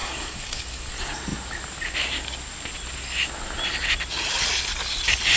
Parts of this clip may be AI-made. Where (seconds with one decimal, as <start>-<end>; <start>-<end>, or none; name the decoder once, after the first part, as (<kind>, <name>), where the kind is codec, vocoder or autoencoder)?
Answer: 0.0-0.9 (codec, DAC)

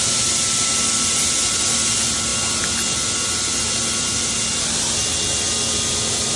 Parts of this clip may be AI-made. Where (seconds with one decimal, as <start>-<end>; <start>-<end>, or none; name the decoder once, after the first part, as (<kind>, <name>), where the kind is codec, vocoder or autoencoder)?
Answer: none

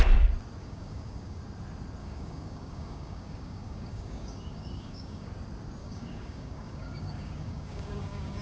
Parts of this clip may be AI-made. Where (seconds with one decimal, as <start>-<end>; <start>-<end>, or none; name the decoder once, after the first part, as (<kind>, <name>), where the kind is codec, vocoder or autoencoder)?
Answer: 0.6-1.4 (codec, DAC); 2.0-5.3; 5.8-8.4

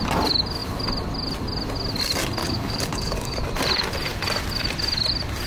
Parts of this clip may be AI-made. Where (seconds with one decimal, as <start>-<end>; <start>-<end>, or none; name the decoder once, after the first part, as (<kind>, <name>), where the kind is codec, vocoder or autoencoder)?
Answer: 2.4-3.4 (codec, DAC)